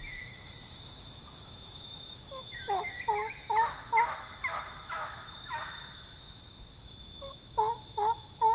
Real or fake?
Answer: fake